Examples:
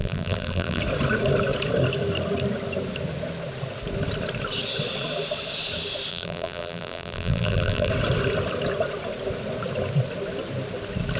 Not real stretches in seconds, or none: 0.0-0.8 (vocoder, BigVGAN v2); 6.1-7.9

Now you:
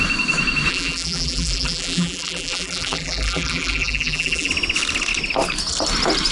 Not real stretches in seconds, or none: 0.7-4.5 (vocoder, BigVGAN v2)

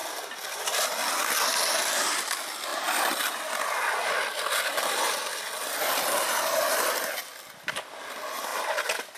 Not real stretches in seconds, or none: 2.7-3.8 (vocoder, BigVGAN v2); 4.7-6.8; 8.5-9.2

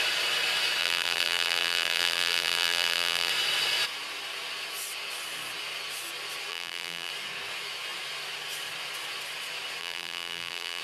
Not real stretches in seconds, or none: 0.8-3.3 (vocoder, BigVGAN v2); 6.5-7.1; 9.8-10.8

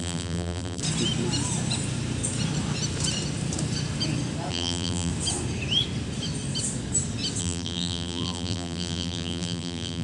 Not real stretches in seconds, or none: 0.0-0.8 (vocoder, BigVGAN v2); 4.5-5.1; 7.4-10.0

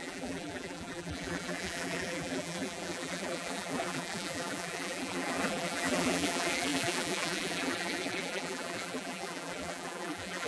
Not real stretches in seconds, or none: 0.0-10.5 (vocoder, BigVGAN v2)

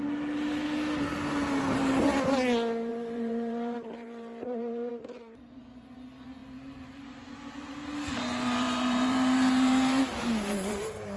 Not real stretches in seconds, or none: 1.4-2.0 (vocoder, BigVGAN v2); 2.9-4.9; 6.4-11.2

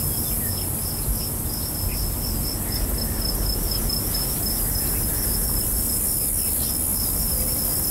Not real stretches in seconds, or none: none